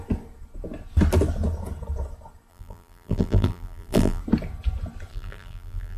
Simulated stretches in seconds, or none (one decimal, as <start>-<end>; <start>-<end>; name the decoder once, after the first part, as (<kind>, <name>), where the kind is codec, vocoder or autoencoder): 2.5-4.2 (vocoder, BigVGAN v2); 5.1-6.0